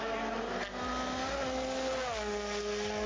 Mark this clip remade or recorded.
recorded